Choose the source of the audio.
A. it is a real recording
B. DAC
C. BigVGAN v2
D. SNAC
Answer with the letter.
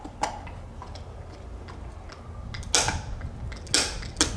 A